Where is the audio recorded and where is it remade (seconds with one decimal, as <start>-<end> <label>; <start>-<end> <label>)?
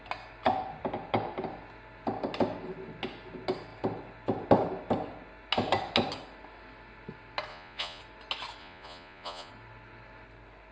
0.0-7.5 recorded; 7.5-8.0 remade; 8.0-8.6 recorded; 8.6-9.5 remade; 9.5-10.7 recorded